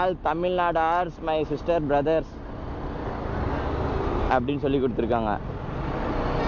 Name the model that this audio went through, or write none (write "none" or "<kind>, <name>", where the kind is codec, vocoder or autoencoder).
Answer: none